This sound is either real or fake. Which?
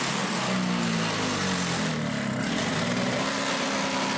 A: real